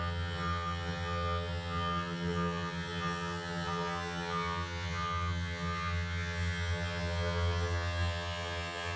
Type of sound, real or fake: fake